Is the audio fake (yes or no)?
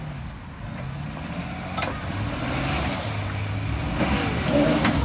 no